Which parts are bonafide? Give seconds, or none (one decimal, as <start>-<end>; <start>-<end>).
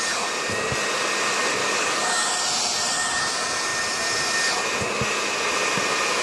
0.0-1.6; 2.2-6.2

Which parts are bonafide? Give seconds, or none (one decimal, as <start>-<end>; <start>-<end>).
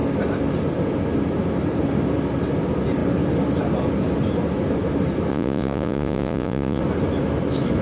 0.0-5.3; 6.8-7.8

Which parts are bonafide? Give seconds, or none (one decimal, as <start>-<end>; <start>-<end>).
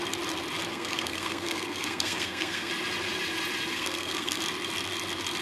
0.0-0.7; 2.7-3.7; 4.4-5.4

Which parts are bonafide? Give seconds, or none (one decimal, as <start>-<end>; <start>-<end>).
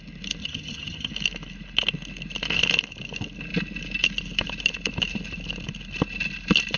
0.0-0.4; 1.1-6.8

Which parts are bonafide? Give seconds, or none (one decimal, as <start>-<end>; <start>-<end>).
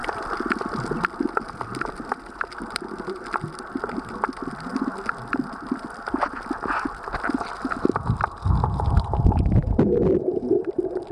0.0-11.1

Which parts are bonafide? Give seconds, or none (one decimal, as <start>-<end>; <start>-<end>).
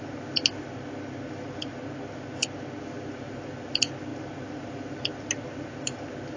0.0-6.4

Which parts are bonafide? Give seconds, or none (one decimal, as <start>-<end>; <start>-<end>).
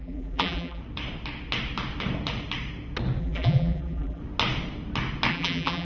0.8-3.2; 4.2-5.3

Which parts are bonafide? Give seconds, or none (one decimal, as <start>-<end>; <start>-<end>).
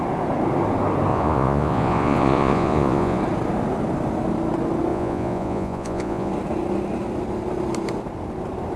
0.0-1.1; 3.2-4.9; 6.3-8.8